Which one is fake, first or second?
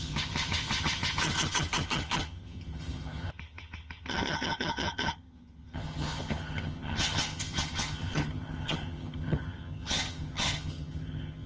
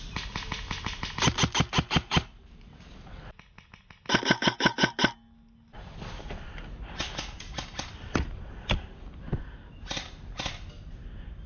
first